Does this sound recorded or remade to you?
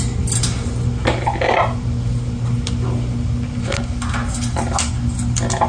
recorded